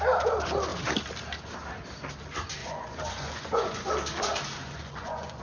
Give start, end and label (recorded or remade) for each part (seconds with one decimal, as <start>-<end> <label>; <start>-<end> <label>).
0.0-2.6 recorded; 2.6-3.9 remade; 3.9-4.6 recorded; 4.6-5.4 remade